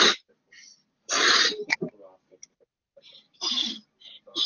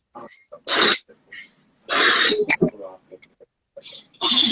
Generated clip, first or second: first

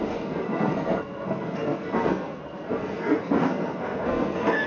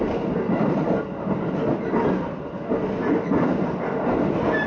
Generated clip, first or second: first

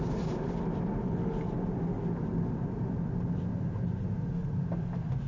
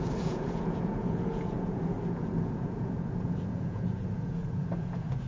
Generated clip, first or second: second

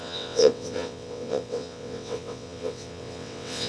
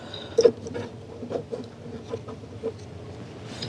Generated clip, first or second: first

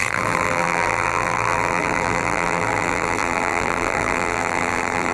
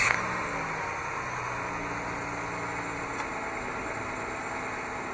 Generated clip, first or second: first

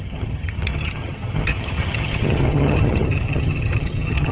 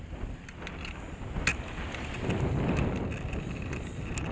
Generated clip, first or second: first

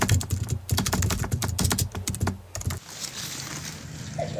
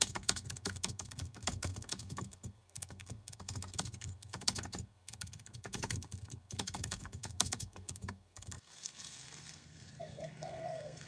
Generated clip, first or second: second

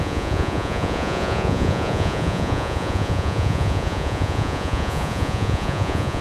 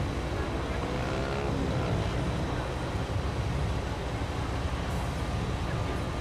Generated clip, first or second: first